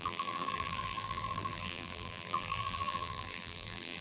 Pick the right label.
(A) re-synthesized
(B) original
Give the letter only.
A